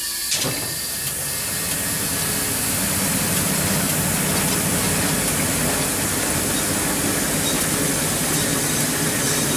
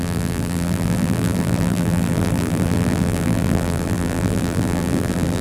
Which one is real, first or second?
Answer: first